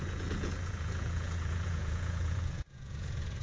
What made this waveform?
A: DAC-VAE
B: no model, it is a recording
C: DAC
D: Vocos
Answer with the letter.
D